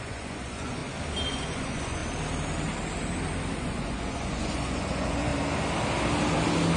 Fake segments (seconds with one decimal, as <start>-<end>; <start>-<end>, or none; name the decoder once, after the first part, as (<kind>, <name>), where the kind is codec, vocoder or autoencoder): 0.0-0.8 (vocoder, Vocos); 1.3-2.0; 3.6-5.3